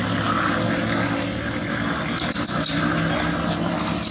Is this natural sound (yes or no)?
yes